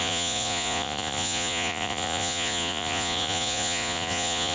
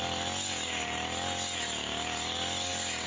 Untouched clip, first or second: second